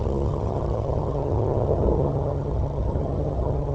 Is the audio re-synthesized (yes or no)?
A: yes